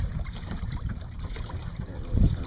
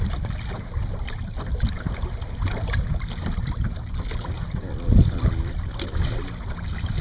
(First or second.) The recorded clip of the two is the second